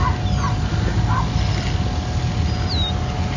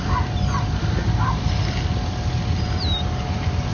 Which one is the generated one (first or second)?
second